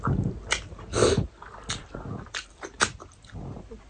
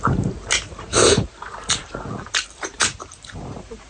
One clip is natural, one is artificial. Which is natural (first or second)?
first